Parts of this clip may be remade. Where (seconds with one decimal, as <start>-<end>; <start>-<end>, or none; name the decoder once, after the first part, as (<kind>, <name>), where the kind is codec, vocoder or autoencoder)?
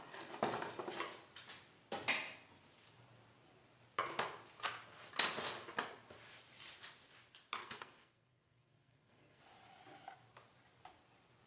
7.6-9.4 (codec, SNAC)